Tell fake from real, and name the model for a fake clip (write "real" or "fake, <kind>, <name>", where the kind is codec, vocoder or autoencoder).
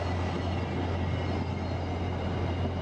real